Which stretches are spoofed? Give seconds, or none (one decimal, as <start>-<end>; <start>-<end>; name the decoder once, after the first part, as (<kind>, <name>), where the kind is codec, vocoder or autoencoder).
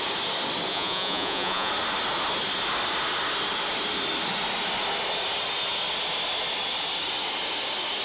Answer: 0.7-1.7 (vocoder, Vocos)